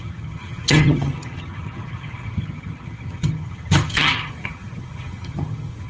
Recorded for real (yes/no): no